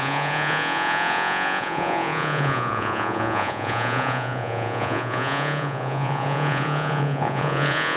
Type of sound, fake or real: fake